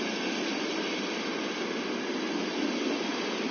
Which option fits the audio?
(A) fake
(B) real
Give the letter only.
B